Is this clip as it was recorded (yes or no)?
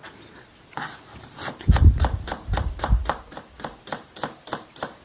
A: yes